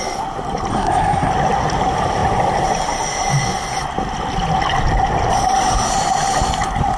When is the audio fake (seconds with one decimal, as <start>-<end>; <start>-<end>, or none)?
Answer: 0.7-1.3